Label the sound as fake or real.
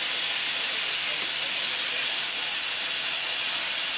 real